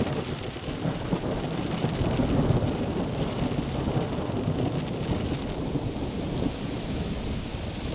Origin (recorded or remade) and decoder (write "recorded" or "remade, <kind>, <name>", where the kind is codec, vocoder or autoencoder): recorded